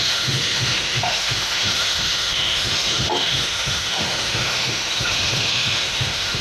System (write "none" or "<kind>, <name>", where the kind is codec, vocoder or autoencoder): autoencoder, DAC-VAE